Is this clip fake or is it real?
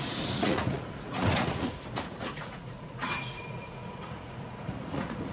fake